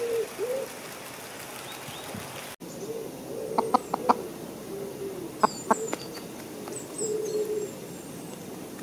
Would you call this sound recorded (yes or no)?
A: yes